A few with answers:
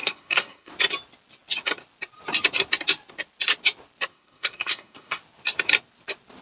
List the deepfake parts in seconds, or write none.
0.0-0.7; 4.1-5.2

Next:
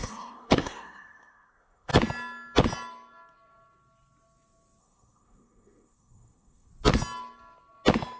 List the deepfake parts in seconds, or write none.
0.0-1.9; 4.8-6.7

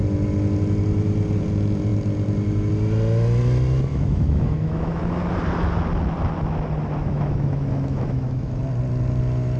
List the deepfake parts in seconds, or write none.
3.9-5.0; 7.0-8.6

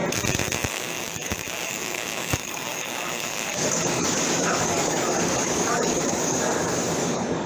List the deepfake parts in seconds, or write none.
0.7-7.5